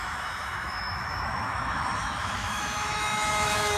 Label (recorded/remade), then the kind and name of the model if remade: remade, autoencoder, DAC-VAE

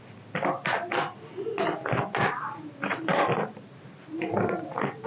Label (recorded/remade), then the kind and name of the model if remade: recorded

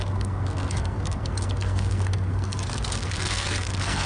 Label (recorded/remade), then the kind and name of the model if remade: remade, codec, SNAC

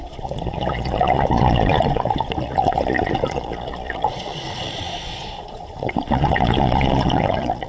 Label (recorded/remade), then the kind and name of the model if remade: remade, vocoder, Vocos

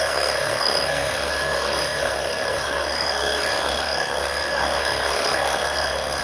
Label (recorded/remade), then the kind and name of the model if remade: remade, codec, SNAC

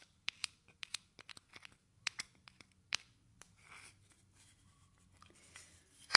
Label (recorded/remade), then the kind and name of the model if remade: remade, vocoder, BigVGAN v2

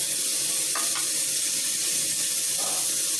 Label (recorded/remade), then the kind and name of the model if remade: remade, vocoder, BigVGAN v2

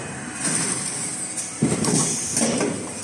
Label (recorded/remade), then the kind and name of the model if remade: recorded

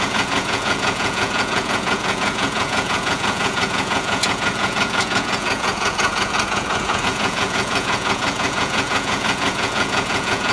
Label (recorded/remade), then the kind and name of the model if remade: remade, vocoder, Vocos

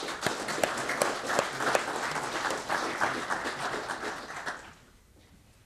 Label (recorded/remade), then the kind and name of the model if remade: recorded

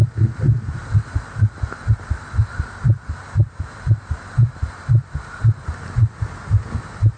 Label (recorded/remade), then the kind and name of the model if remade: recorded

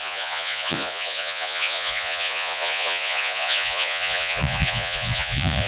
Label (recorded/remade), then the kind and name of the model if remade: remade, vocoder, Vocos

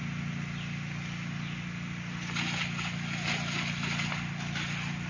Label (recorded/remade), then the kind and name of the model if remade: recorded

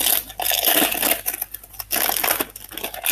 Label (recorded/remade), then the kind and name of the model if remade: recorded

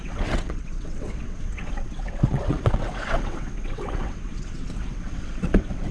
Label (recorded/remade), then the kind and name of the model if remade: remade, vocoder, WaveNeXt